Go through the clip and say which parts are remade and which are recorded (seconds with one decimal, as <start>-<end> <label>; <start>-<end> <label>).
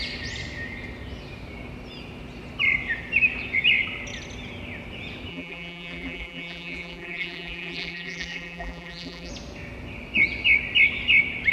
0.0-5.3 recorded; 5.3-9.3 remade; 9.3-11.5 recorded